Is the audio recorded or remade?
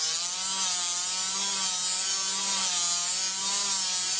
recorded